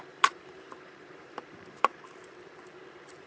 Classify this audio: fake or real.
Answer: fake